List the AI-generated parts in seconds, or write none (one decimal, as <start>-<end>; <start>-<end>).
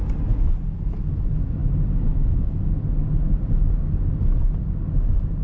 none